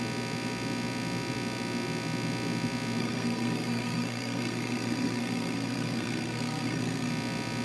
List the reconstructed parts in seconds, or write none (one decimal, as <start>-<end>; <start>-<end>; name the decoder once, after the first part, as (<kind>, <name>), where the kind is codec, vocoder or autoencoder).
3.0-7.1 (codec, SNAC)